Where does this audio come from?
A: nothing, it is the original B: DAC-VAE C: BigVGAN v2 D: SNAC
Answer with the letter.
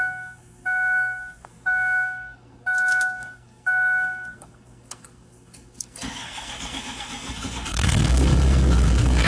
D